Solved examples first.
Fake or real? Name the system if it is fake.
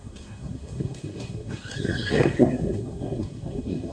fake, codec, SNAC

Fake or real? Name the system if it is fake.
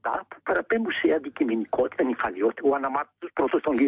real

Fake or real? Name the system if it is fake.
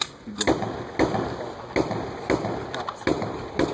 real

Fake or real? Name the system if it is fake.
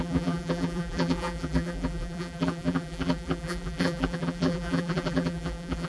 fake, vocoder, BigVGAN v2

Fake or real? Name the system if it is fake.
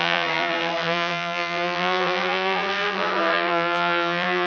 fake, vocoder, BigVGAN v2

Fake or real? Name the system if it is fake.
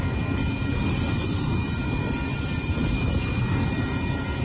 real